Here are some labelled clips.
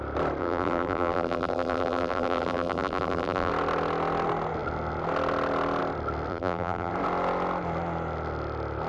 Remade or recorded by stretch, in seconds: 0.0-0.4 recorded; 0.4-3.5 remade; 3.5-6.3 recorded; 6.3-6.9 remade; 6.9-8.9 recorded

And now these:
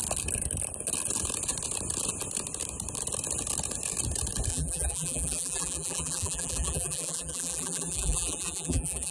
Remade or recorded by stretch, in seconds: 0.0-4.5 recorded; 4.5-9.1 remade

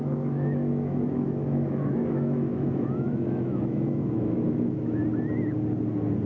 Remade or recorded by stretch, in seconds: 0.0-5.0 remade; 5.0-6.3 recorded

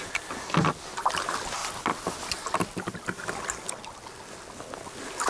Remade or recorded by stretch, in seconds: 0.0-5.3 recorded

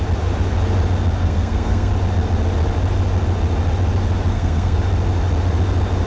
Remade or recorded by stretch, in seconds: 0.0-1.2 recorded; 1.2-1.9 remade; 1.9-4.3 recorded; 4.3-4.8 remade; 4.8-6.1 recorded

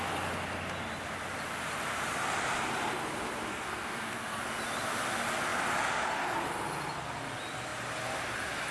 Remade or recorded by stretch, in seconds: 0.0-3.5 recorded; 3.5-4.4 remade; 4.4-8.7 recorded

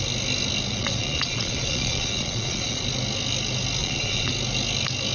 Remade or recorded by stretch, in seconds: 0.0-0.7 recorded; 0.7-2.8 remade; 2.8-3.8 recorded; 3.8-4.3 remade; 4.3-5.1 recorded